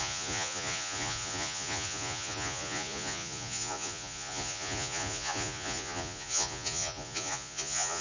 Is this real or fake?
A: fake